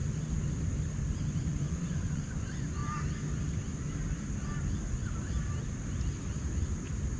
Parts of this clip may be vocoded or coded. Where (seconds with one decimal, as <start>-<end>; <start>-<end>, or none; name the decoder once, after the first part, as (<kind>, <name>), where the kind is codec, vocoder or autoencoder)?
1.3-2.8 (vocoder, Vocos)